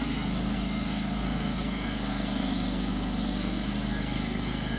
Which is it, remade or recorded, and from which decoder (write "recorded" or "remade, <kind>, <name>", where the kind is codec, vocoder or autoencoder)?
remade, codec, SNAC